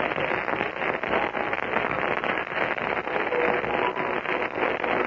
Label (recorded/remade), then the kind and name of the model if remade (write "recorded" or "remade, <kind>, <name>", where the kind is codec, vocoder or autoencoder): recorded